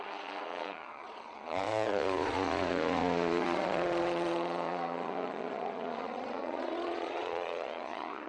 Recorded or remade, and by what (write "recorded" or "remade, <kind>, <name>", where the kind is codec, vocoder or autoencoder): remade, vocoder, Vocos